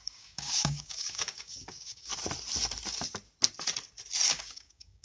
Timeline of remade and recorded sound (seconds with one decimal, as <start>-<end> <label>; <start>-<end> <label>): 0.0-2.1 remade; 2.1-4.3 recorded; 4.3-5.0 remade